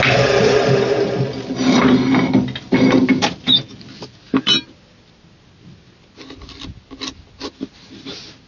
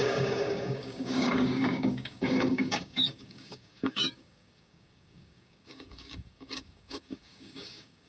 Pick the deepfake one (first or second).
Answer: second